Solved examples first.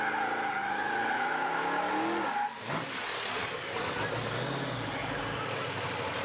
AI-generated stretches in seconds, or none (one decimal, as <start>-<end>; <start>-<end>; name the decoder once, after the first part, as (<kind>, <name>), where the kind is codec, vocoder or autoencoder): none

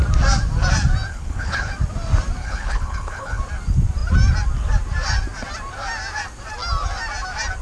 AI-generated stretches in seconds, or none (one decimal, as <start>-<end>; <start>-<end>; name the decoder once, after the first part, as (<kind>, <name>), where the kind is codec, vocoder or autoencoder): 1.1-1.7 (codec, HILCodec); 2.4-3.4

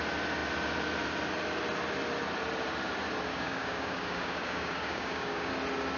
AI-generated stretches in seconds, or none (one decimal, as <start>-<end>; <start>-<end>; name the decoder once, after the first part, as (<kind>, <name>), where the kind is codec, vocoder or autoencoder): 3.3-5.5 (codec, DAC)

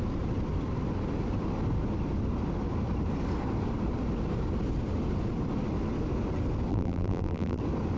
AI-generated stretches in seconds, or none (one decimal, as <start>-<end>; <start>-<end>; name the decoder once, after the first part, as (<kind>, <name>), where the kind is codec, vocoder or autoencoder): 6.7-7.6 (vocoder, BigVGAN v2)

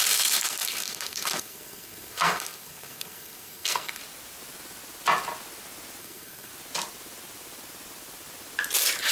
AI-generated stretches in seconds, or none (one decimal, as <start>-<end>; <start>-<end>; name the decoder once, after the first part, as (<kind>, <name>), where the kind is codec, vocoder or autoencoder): 0.0-4.0 (codec, SNAC); 6.0-6.5

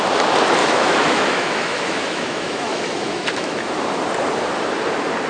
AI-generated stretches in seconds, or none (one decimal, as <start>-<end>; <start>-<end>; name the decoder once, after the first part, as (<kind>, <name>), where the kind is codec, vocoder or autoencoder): 0.6-3.7 (autoencoder, DAC-VAE)

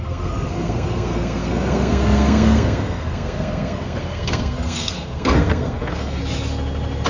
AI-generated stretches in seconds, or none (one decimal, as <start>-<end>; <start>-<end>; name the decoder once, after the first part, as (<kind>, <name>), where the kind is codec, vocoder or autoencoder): 0.0-6.2 (codec, SNAC)

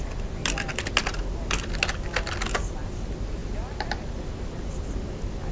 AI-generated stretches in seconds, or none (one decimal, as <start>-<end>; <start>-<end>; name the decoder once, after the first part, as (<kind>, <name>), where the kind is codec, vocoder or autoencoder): none